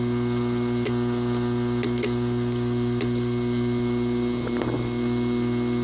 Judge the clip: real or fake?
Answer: real